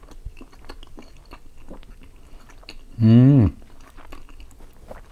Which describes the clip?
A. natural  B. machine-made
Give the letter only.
A